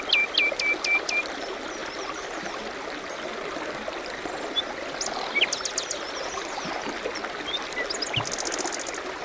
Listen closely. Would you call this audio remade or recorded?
recorded